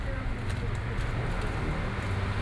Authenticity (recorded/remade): recorded